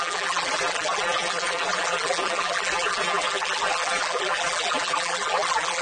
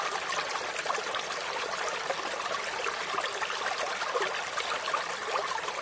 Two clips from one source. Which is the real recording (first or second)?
second